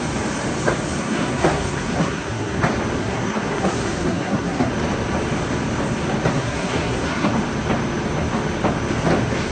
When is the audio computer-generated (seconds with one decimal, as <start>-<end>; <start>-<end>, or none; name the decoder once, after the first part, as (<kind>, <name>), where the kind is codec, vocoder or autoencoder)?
1.0-2.6 (codec, SNAC); 3.0-4.7; 6.3-7.3